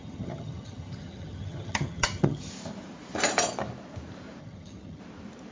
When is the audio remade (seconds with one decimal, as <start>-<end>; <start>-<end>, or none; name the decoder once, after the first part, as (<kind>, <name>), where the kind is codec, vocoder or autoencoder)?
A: 0.0-2.5 (vocoder, HiFi-GAN); 4.4-5.0